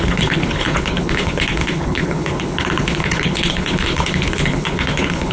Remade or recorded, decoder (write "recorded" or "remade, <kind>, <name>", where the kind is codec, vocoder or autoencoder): remade, codec, HILCodec